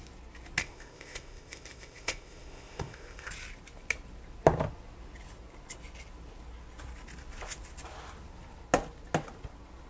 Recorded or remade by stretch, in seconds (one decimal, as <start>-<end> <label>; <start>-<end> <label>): 0.0-0.6 recorded; 0.6-3.3 remade; 3.3-9.9 recorded